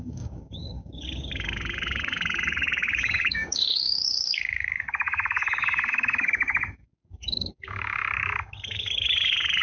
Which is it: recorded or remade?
remade